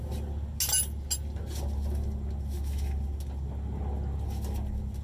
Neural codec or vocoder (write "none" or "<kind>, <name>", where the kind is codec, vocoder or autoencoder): none